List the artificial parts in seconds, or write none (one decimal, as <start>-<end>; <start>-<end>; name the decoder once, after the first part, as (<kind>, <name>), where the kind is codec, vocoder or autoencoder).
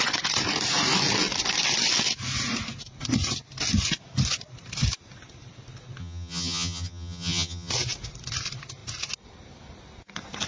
6.0-7.7 (vocoder, HiFi-GAN)